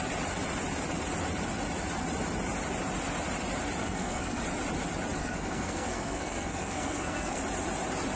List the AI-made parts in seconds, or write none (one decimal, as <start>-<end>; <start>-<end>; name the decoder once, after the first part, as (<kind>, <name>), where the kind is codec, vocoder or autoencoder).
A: 3.8-4.4 (codec, SNAC); 5.2-7.4